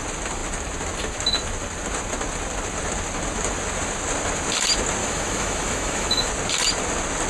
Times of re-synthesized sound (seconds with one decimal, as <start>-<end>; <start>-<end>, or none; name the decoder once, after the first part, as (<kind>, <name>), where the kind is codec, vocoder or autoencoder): 5.0-6.3 (autoencoder, DAC-VAE)